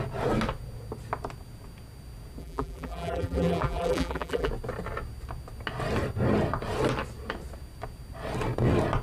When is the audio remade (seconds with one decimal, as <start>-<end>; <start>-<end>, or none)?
2.4-4.5